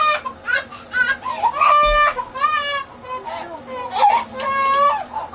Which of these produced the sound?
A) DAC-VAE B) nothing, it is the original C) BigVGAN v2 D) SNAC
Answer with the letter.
B